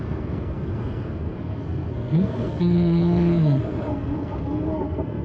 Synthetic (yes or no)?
yes